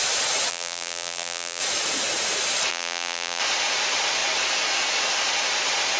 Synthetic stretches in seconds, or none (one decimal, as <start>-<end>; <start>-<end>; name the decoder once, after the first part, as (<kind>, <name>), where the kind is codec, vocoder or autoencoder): 0.5-1.6 (vocoder, BigVGAN v2); 2.7-3.4